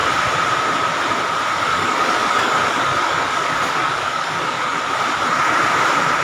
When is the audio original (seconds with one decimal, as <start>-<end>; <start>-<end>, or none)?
0.0-1.7; 4.8-6.2